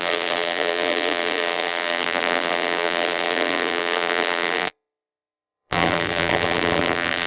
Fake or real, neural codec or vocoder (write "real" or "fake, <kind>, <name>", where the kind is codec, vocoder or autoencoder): fake, vocoder, BigVGAN v2